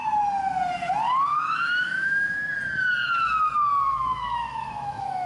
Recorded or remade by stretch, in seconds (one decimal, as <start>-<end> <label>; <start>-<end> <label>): 0.0-1.3 recorded; 1.3-2.5 remade; 2.5-3.9 recorded; 3.9-5.3 remade